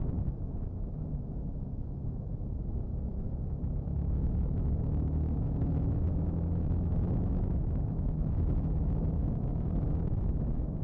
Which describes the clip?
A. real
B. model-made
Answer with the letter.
B